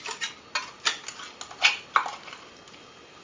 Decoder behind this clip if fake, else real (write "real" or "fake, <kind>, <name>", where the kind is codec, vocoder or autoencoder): real